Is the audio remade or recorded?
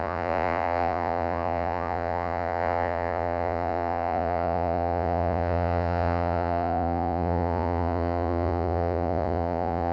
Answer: remade